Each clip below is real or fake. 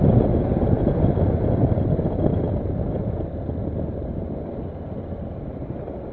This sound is real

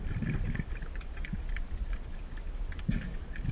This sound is real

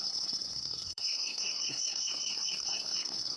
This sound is fake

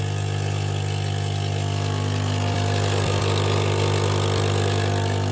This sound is real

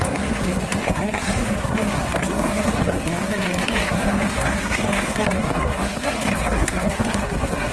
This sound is fake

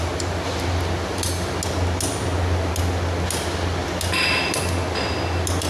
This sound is real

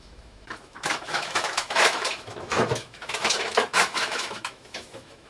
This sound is fake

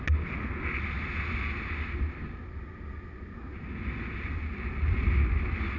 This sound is real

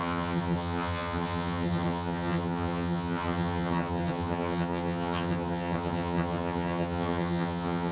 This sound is fake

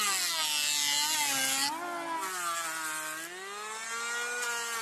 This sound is real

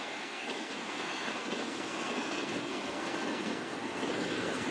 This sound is fake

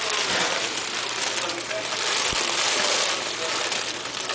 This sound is real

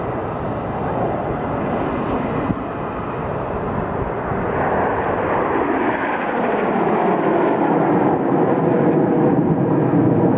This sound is real